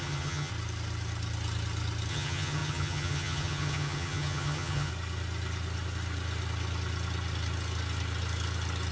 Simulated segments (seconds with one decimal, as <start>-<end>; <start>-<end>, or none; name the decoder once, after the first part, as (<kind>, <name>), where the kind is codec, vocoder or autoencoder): 0.0-0.5 (vocoder, HiFi-GAN); 2.1-4.9